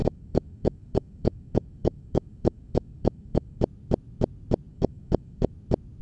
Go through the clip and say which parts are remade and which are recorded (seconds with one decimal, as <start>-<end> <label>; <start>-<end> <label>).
0.0-3.6 remade; 3.6-4.7 recorded; 4.7-5.5 remade; 5.5-6.0 recorded